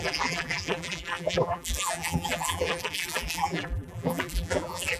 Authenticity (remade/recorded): remade